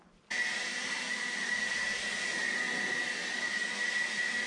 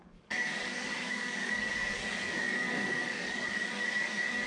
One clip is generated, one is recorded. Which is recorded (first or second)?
first